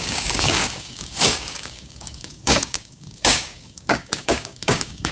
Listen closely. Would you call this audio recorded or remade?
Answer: remade